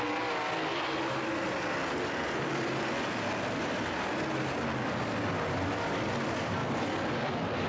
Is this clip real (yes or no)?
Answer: yes